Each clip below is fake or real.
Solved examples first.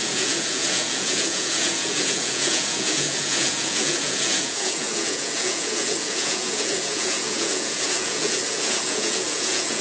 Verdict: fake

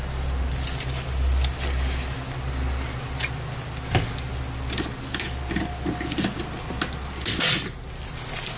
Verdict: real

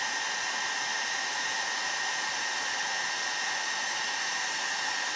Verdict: real